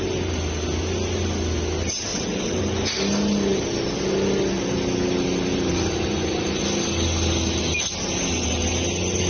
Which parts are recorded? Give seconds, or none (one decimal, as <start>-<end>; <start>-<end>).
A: 0.0-2.1; 2.6-9.3